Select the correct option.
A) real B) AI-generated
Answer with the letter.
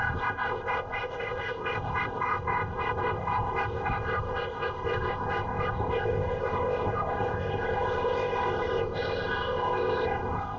B